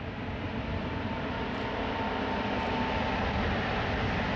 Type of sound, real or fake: real